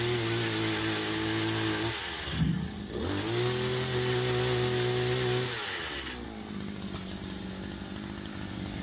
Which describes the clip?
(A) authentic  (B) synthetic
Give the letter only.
A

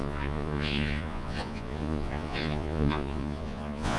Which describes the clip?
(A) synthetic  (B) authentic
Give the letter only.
A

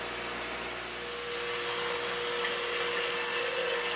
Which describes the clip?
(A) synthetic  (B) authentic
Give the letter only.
B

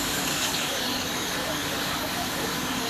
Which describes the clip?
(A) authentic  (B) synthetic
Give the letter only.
B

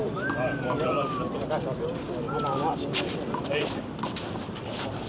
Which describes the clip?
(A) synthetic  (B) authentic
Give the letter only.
B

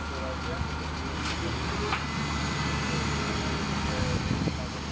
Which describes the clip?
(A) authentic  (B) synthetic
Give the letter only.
A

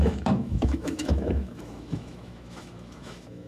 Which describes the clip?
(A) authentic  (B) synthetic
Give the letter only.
B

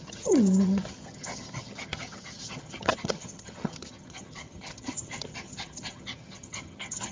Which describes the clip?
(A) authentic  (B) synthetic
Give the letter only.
B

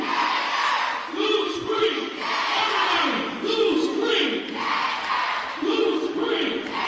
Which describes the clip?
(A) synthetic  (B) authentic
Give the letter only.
B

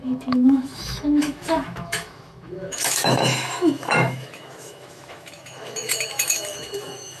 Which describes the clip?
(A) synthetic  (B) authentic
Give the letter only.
A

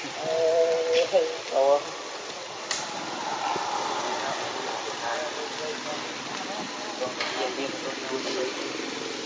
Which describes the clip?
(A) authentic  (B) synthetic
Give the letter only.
A